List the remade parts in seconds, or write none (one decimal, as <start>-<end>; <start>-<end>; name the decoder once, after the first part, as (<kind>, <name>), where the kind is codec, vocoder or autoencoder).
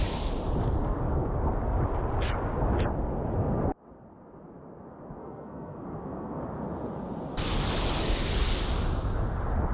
0.8-1.3 (codec, SNAC); 5.2-6.4